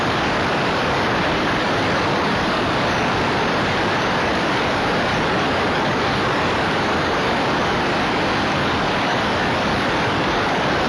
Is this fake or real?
fake